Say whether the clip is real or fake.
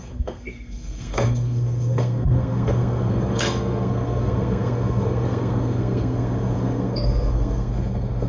fake